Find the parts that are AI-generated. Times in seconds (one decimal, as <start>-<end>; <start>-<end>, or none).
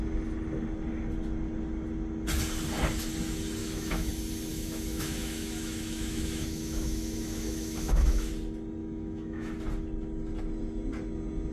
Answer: 3.6-4.1; 4.5-8.3; 8.8-9.5